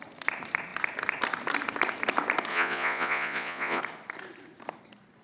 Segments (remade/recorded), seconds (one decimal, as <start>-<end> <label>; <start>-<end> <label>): 0.0-2.5 recorded; 2.5-3.8 remade; 3.8-5.2 recorded